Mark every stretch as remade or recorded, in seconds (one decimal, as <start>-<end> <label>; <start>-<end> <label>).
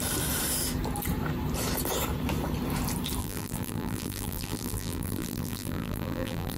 0.0-3.2 recorded; 3.2-6.6 remade